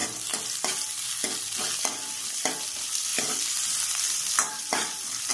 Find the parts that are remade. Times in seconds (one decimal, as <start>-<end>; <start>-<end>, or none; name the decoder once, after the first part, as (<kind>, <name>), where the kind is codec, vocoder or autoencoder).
3.1-5.3 (vocoder, BigVGAN v2)